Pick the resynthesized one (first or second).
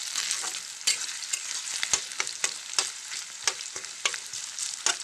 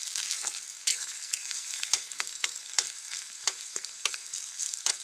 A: second